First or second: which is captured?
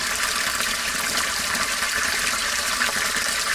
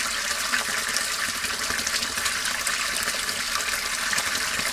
second